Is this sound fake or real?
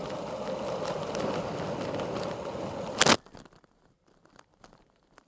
real